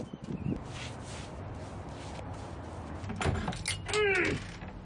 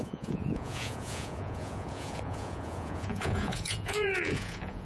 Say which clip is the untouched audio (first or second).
first